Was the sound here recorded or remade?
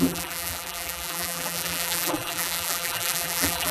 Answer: remade